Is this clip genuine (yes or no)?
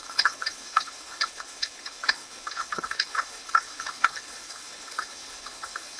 no